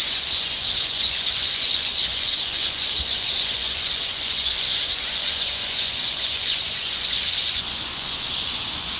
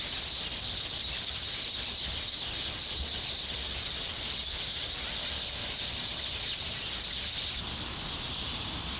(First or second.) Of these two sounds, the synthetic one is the first